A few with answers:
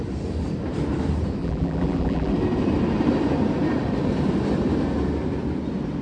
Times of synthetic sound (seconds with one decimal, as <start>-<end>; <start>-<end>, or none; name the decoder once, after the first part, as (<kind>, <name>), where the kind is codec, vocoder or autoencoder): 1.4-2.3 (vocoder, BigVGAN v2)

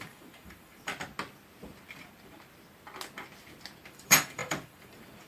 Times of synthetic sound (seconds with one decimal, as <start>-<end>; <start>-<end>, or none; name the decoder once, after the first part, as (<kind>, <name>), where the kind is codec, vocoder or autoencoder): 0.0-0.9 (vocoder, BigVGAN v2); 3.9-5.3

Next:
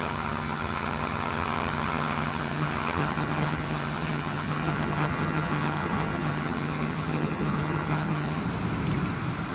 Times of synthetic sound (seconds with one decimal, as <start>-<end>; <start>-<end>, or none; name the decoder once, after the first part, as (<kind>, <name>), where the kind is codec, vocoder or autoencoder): 0.0-8.4 (vocoder, HiFi-GAN)

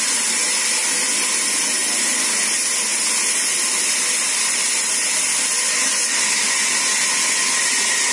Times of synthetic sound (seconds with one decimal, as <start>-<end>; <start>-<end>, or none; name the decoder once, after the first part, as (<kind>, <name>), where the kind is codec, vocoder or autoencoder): none

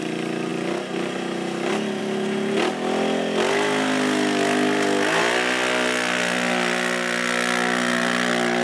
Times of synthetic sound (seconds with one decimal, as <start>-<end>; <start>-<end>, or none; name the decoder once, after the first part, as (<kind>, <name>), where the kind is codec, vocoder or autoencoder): none

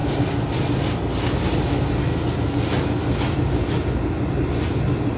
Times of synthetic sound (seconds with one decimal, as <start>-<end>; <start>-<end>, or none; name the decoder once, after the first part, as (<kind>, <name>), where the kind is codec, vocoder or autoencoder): none

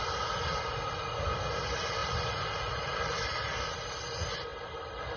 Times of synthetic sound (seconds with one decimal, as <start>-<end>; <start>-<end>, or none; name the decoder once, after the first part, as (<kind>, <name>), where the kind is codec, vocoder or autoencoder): 2.0-4.0 (vocoder, BigVGAN v2); 4.5-5.2

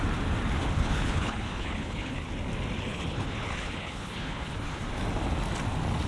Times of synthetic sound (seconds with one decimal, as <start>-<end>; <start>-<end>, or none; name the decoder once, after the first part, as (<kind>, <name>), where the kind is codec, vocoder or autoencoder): 0.6-2.3 (codec, HILCodec); 2.9-4.8